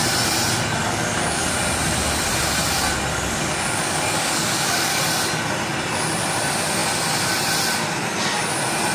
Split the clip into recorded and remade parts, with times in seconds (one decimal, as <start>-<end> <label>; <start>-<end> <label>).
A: 0.0-0.8 recorded; 0.8-1.4 remade; 1.4-3.1 recorded; 3.1-5.0 remade; 5.0-8.9 recorded